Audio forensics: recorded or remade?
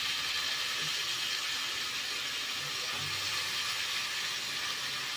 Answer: recorded